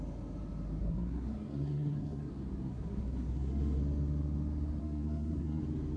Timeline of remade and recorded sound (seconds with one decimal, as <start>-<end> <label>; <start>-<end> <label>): 0.0-0.8 recorded; 0.8-2.3 remade; 2.3-2.7 recorded; 2.7-3.8 remade; 3.8-4.8 recorded; 4.8-5.6 remade; 5.6-6.0 recorded